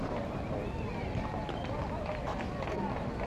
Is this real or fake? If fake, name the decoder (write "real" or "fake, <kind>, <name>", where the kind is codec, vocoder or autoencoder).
real